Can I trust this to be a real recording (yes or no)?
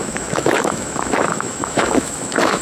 no